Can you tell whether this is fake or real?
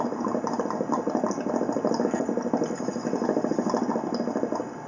real